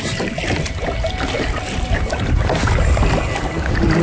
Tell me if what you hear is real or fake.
real